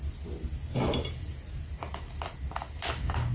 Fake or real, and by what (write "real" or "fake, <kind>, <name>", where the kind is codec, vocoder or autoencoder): real